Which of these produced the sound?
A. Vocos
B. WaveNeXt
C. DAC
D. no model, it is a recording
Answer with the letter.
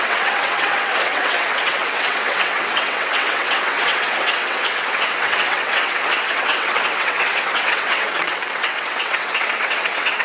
B